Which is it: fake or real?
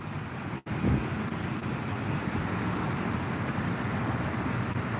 real